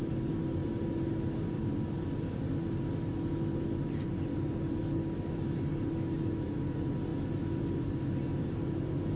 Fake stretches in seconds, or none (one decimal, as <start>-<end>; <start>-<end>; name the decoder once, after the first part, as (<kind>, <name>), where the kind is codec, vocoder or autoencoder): none